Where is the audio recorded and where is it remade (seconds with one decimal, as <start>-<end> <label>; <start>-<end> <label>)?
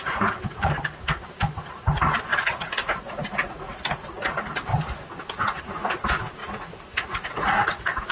0.0-2.3 recorded; 2.3-4.1 remade; 4.1-6.4 recorded; 6.4-8.1 remade